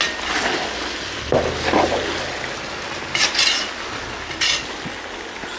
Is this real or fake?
real